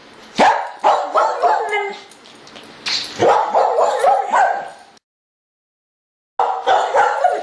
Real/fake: real